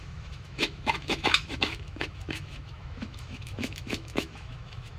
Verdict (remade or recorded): remade